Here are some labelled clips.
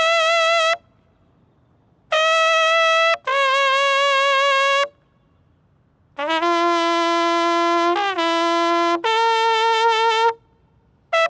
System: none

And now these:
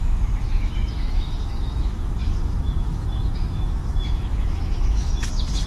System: autoencoder, DAC-VAE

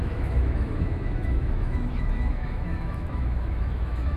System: autoencoder, DAC-VAE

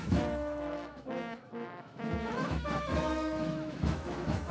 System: autoencoder, DAC-VAE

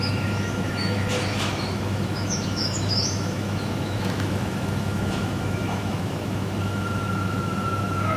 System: autoencoder, DAC-VAE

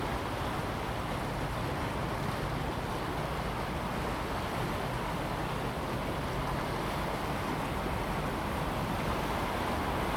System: none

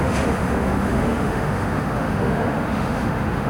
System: autoencoder, DAC-VAE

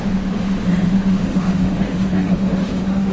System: autoencoder, DAC-VAE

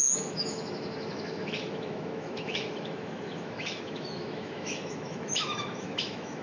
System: autoencoder, DAC-VAE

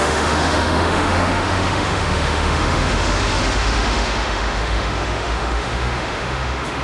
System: autoencoder, DAC-VAE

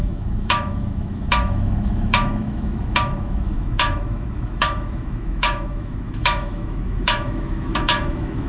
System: autoencoder, DAC-VAE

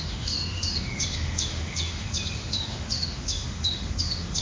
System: autoencoder, DAC-VAE